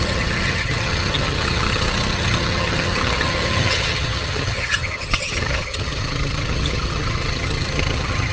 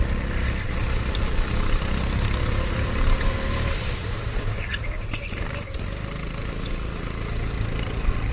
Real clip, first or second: second